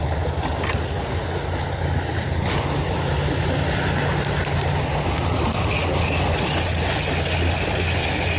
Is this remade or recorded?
recorded